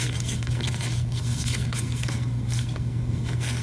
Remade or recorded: remade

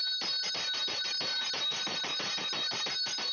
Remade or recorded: recorded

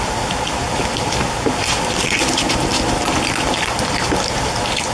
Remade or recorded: recorded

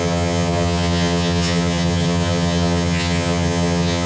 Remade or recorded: remade